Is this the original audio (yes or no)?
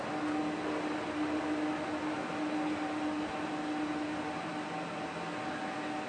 yes